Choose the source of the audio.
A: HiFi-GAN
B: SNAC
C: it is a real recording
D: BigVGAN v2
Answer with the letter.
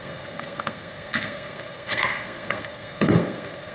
B